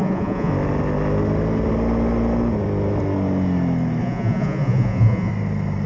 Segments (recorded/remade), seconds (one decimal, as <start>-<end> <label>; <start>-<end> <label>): 0.0-0.5 remade; 0.5-4.0 recorded; 4.0-5.3 remade; 5.3-5.9 recorded